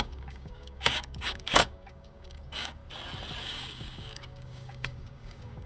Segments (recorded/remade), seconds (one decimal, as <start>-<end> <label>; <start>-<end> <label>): 0.0-2.8 remade; 2.8-3.4 recorded; 3.4-5.7 remade